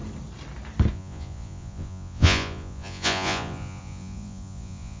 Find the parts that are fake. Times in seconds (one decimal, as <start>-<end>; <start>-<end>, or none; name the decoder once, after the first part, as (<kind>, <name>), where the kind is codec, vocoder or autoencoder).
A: 0.9-5.0 (vocoder, Vocos)

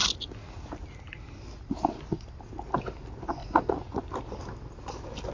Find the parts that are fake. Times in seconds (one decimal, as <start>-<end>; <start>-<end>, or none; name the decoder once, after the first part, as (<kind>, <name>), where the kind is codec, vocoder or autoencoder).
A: 3.4-4.0 (vocoder, Vocos)